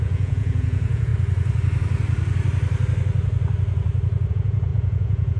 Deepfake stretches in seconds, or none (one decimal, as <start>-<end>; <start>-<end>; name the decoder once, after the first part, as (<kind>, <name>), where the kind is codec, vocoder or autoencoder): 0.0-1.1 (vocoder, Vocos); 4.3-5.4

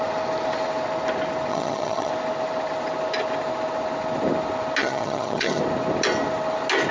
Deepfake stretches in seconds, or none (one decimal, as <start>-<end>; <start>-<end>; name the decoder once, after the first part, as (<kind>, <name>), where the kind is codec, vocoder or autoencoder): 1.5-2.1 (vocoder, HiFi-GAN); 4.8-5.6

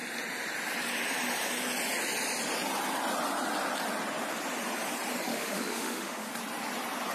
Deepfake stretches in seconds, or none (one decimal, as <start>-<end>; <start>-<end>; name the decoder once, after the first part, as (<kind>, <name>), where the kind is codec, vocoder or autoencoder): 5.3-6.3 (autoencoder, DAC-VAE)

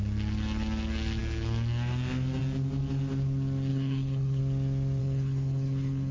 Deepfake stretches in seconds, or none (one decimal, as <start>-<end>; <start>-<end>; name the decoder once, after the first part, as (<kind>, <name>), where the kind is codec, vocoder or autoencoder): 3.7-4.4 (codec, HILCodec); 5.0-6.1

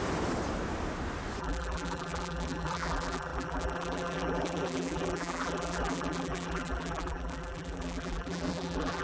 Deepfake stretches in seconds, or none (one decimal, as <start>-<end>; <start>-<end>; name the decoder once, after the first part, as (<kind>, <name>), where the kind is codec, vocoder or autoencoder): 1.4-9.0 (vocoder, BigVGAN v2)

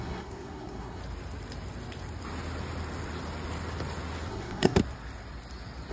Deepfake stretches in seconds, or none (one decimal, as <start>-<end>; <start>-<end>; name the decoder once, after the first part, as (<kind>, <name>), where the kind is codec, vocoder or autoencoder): 0.0-1.0 (codec, SNAC); 4.3-4.8

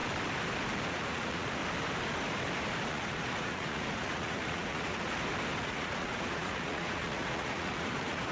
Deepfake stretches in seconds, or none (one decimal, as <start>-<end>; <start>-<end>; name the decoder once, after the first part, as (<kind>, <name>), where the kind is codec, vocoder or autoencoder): 0.9-1.6 (vocoder, Vocos); 2.9-5.1; 5.6-8.3